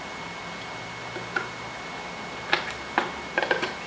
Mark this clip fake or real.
real